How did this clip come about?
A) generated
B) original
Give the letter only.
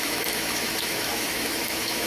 A